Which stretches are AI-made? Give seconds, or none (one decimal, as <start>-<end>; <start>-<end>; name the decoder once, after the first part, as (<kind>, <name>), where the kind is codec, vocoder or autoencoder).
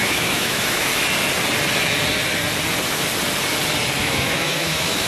0.0-0.9 (autoencoder, DAC-VAE); 4.0-5.1